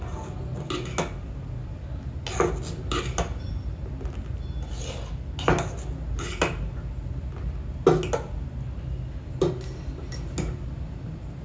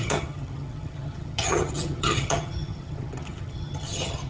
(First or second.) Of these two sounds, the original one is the first